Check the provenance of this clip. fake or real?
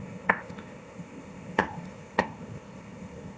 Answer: fake